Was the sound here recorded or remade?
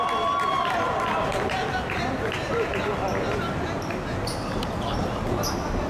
recorded